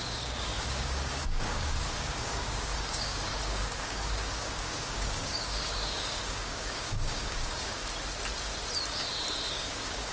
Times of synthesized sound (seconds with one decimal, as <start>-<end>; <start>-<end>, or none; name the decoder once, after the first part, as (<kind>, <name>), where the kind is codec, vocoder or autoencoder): 0.0-7.8 (codec, DAC); 9.5-10.1